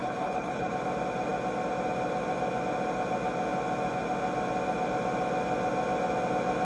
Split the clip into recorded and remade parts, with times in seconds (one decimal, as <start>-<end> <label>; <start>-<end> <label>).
0.0-0.7 remade; 0.7-6.6 recorded

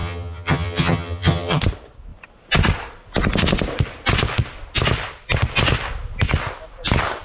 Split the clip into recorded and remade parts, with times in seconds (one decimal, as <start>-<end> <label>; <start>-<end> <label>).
0.0-1.6 remade; 1.6-7.2 recorded